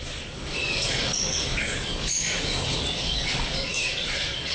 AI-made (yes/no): yes